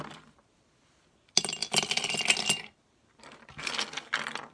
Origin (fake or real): real